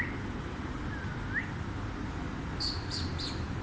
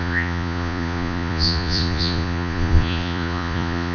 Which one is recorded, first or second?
first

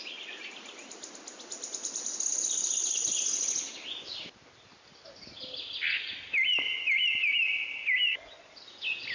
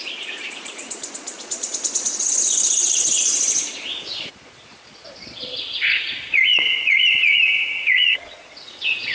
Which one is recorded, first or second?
first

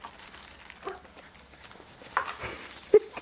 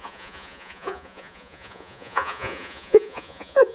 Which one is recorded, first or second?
first